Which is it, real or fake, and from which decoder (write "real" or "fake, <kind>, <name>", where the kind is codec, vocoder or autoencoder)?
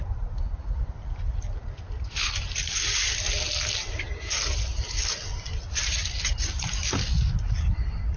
real